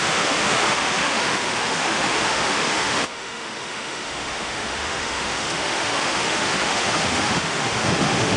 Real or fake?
fake